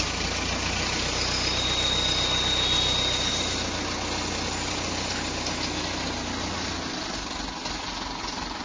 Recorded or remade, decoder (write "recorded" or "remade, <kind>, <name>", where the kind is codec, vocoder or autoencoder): recorded